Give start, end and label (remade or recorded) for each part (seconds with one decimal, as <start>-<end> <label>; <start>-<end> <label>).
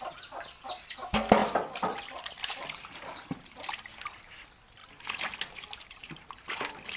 0.0-7.0 recorded